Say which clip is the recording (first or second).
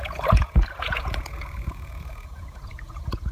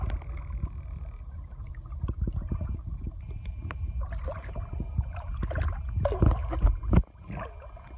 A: second